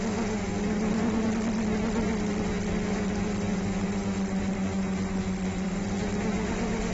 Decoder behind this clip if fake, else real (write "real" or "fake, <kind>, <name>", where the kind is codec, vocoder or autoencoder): real